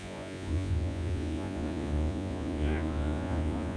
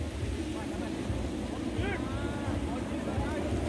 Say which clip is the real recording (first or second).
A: second